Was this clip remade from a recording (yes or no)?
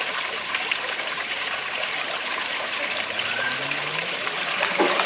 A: yes